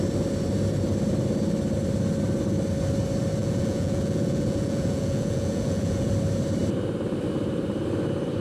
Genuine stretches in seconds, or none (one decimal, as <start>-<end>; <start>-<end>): 0.0-3.4; 6.1-8.4